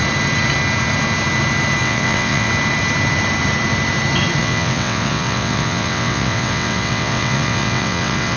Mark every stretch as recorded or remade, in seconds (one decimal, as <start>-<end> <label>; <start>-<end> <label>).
0.0-1.8 recorded; 1.8-2.5 remade; 2.5-4.4 recorded; 4.4-8.4 remade